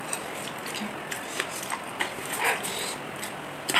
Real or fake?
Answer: real